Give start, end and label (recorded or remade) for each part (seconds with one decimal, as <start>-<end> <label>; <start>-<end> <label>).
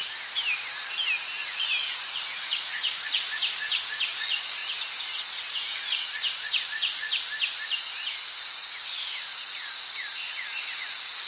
0.0-1.4 recorded; 1.4-4.6 remade; 4.6-5.5 recorded; 5.5-7.1 remade; 7.1-8.9 recorded; 8.9-11.3 remade